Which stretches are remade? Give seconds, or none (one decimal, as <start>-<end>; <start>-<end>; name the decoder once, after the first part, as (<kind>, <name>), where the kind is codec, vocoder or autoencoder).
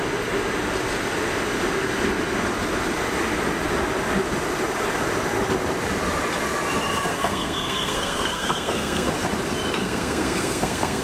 7.1-9.1 (codec, SNAC); 9.8-11.0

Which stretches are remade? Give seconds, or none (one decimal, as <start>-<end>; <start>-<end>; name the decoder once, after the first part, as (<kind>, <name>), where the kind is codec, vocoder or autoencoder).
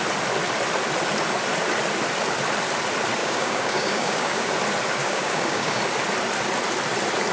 3.2-4.5 (codec, DAC); 5.0-5.8